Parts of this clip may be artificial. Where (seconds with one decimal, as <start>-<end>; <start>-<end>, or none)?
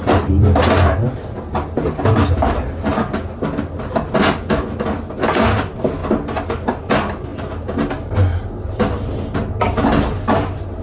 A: none